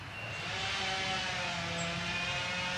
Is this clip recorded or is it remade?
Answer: recorded